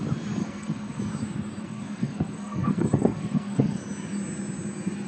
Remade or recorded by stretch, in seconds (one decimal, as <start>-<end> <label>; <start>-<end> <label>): 0.0-0.4 recorded; 0.4-1.0 remade; 1.0-1.6 recorded; 1.6-3.8 remade; 3.8-5.1 recorded